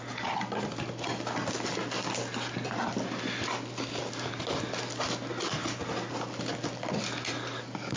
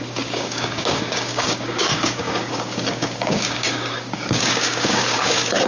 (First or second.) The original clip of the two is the first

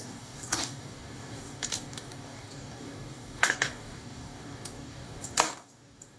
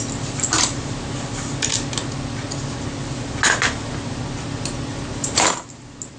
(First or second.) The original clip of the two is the second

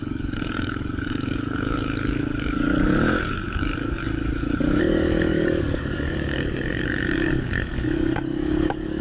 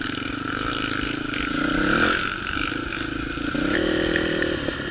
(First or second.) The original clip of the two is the second